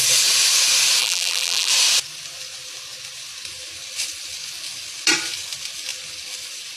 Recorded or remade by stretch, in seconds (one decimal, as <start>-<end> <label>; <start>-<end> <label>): 0.0-1.0 recorded; 1.0-1.7 remade; 1.7-6.8 recorded